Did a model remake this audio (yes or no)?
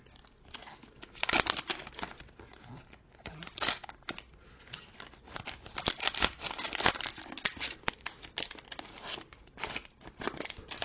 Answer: no